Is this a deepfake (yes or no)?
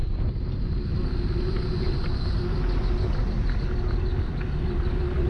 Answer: no